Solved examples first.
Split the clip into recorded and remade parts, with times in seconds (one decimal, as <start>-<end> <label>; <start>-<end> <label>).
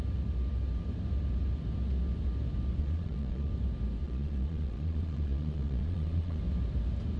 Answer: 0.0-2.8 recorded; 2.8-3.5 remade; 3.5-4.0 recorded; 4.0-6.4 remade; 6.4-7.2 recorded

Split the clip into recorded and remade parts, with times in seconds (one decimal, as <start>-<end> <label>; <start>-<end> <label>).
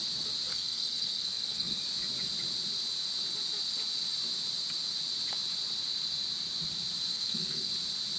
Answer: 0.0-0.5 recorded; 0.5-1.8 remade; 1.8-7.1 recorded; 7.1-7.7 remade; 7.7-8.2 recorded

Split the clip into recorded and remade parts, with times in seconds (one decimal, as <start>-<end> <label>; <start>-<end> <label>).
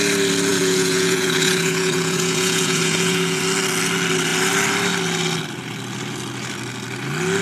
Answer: 0.0-0.5 recorded; 0.5-3.4 remade; 3.4-7.4 recorded